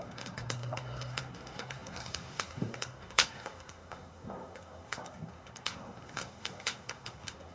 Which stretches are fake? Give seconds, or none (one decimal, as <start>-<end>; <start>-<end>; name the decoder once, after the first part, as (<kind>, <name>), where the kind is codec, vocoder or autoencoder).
0.0-7.5 (codec, SNAC)